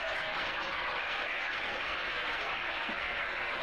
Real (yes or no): no